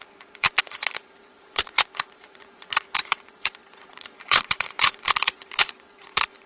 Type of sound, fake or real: fake